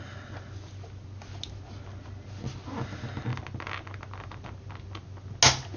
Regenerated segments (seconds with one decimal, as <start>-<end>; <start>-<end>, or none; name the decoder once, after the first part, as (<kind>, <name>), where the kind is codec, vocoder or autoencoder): none